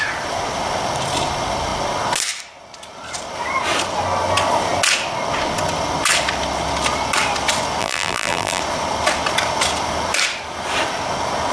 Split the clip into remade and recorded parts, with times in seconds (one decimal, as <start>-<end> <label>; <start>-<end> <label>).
0.0-7.8 recorded; 7.8-8.6 remade; 8.6-11.5 recorded